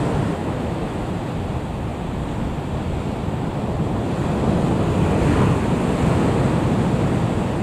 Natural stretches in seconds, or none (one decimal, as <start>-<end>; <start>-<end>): 0.0-0.4; 1.1-7.6